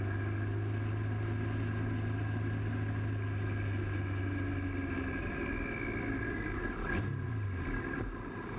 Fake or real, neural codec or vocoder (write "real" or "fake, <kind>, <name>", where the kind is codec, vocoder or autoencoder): real